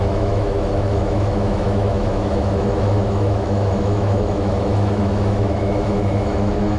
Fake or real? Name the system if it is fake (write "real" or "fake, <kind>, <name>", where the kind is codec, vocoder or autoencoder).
fake, autoencoder, DAC-VAE